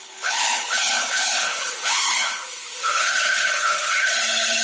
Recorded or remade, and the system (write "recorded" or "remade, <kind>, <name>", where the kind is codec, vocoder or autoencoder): remade, codec, HILCodec